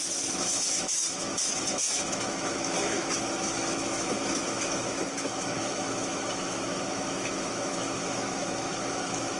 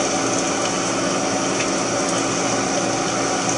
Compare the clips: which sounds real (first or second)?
second